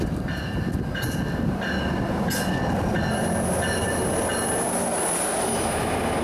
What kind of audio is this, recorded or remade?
recorded